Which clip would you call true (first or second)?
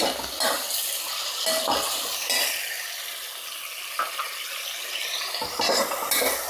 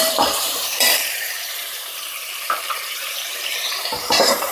first